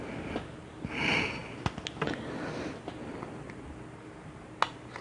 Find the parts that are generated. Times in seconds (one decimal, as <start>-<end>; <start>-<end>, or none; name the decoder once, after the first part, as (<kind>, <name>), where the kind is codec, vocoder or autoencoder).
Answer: none